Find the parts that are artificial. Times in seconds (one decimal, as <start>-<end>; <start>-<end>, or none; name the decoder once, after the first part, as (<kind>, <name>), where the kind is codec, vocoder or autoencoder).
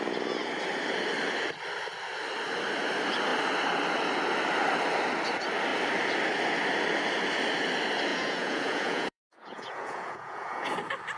8.1-10.7 (vocoder, Vocos)